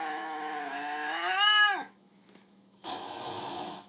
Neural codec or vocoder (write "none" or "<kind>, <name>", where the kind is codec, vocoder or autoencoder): autoencoder, DAC-VAE